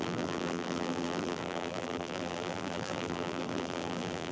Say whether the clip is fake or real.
fake